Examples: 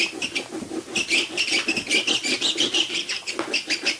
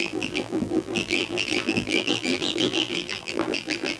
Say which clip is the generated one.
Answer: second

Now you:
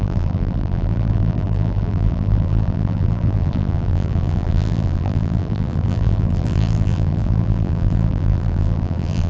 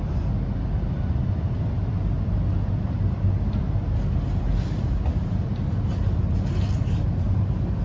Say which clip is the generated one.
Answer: first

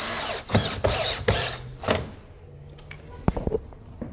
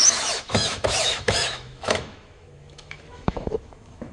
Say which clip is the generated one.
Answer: second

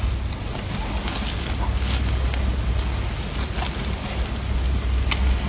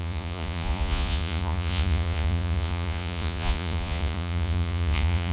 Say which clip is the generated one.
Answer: second